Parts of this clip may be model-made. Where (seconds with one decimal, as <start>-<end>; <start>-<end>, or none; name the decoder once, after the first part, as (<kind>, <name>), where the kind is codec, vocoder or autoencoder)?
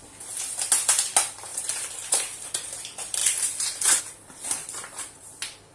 1.5-2.7 (vocoder, BigVGAN v2); 3.2-4.0; 4.6-5.3